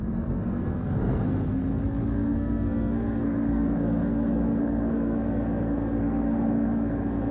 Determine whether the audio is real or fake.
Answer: fake